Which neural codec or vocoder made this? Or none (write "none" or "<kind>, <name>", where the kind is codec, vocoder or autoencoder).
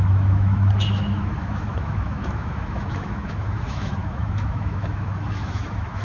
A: autoencoder, DAC-VAE